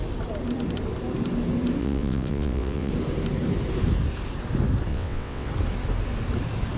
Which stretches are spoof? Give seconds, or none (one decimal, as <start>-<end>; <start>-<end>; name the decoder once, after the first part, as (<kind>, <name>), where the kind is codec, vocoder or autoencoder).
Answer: 1.8-2.9 (vocoder, WaveNeXt); 4.9-5.5